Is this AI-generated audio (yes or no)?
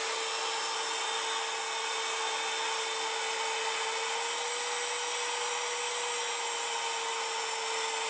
no